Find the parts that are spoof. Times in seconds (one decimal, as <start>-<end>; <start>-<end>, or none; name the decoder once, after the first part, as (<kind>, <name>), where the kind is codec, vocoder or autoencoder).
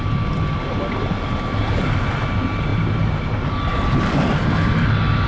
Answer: 2.7-3.2 (vocoder, BigVGAN v2); 3.7-4.4